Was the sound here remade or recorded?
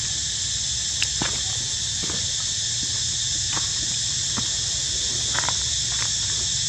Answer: recorded